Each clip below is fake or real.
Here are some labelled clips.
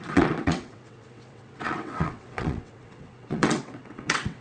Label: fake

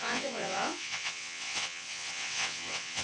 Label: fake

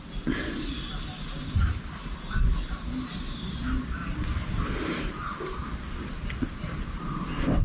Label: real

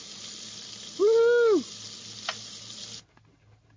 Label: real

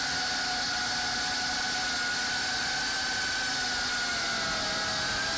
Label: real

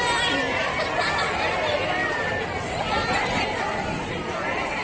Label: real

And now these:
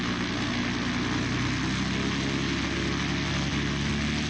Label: real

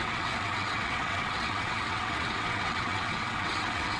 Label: fake